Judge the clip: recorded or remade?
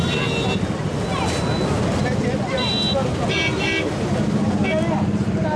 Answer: recorded